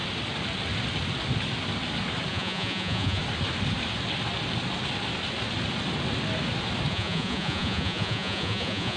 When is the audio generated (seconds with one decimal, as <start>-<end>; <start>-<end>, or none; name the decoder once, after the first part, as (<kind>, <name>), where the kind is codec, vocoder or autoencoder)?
2.3-3.2 (vocoder, Vocos); 6.9-9.0